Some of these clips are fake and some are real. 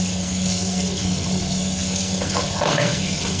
fake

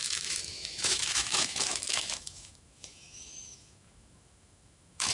fake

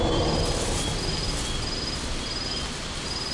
real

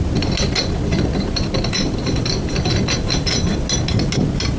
real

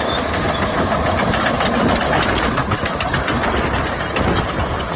real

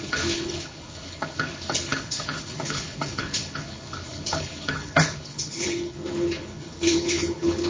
fake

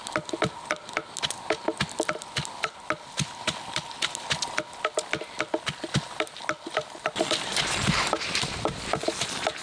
real